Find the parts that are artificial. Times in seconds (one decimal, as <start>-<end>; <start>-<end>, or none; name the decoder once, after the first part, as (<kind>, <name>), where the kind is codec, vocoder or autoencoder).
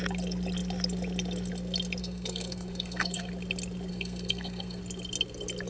2.0-3.3 (codec, SNAC); 3.9-4.8